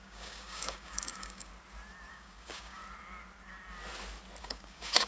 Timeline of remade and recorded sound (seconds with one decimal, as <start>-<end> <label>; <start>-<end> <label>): 0.0-1.5 remade; 1.5-2.1 recorded; 2.1-2.8 remade; 2.8-4.4 recorded; 4.4-5.1 remade